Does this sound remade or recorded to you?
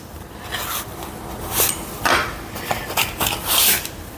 recorded